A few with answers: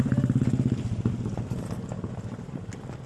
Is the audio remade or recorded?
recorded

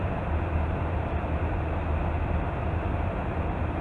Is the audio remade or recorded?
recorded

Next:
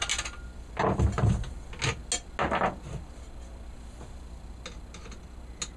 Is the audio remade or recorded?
recorded